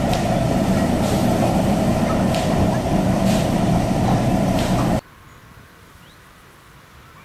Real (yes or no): no